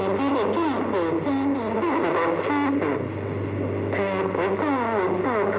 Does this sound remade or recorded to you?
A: recorded